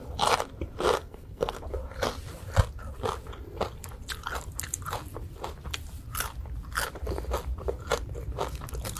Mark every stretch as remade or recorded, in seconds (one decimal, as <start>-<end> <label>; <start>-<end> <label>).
0.0-1.0 recorded; 1.0-1.6 remade; 1.6-9.0 recorded